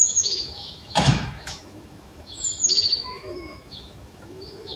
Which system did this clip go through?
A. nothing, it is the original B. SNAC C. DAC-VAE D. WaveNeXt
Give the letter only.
C